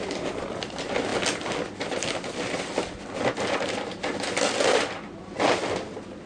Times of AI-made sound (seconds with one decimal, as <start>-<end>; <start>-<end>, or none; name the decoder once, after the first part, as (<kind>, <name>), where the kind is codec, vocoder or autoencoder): none

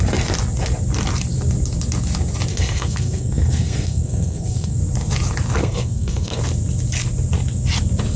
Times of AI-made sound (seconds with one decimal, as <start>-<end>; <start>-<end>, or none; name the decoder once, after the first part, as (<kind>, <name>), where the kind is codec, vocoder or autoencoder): 2.5-4.8 (codec, SNAC); 5.6-6.4

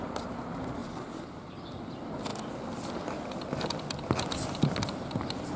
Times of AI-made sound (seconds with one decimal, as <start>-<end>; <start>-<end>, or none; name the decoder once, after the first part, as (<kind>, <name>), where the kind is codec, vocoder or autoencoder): 0.8-1.8 (vocoder, BigVGAN v2)